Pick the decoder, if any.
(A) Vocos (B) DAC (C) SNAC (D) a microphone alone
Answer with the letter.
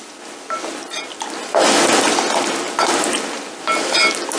D